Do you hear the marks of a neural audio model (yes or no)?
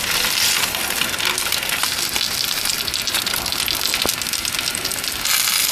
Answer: no